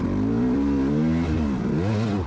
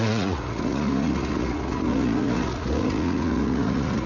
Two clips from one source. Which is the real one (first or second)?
first